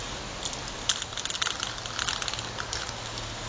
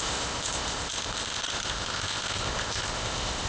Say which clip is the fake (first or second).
second